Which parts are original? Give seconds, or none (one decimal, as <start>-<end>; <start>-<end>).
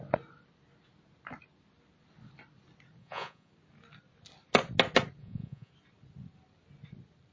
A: 0.0-3.0; 3.5-5.2; 5.7-7.3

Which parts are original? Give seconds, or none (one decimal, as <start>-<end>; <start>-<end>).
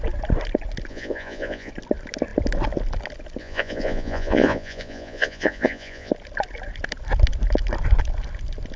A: 0.0-0.9; 1.7-3.4; 6.1-8.8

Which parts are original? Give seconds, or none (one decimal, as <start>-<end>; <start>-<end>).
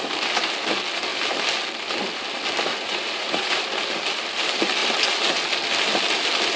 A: 0.0-2.7; 3.5-6.6